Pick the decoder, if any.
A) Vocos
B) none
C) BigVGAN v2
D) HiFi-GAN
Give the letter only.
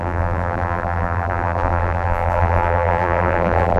C